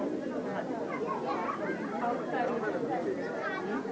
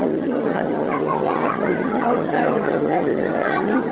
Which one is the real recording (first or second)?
first